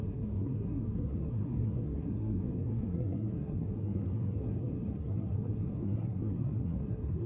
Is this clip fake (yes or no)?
yes